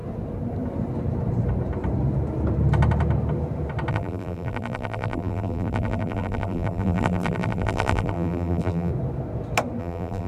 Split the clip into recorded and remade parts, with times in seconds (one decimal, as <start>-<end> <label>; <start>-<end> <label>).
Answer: 0.0-3.9 recorded; 3.9-8.9 remade; 8.9-9.8 recorded; 9.8-10.3 remade